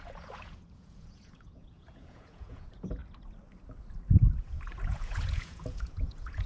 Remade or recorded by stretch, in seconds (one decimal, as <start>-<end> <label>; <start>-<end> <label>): 0.0-3.0 remade; 3.0-4.4 recorded; 4.4-6.5 remade